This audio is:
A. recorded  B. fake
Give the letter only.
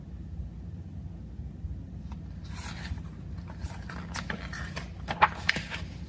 A